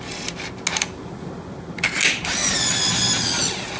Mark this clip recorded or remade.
recorded